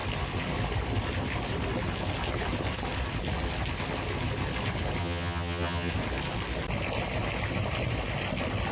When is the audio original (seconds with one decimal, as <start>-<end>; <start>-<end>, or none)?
0.0-5.0; 5.9-8.7